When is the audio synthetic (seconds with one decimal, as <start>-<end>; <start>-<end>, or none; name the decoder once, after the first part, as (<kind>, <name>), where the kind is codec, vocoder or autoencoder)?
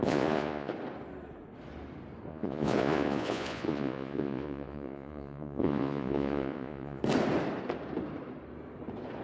0.0-0.7 (vocoder, Vocos); 2.3-7.0